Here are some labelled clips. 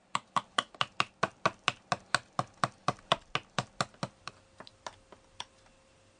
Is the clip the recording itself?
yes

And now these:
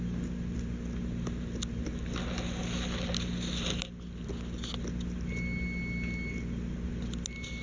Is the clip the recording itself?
yes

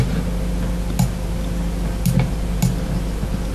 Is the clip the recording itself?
yes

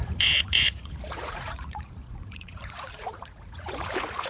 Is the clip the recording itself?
no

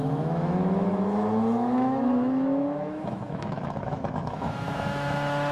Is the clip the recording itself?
no